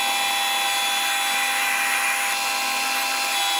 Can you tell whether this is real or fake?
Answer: real